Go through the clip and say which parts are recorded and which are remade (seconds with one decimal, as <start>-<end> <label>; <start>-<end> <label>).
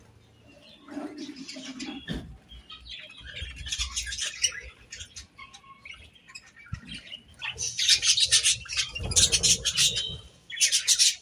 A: 0.0-11.2 recorded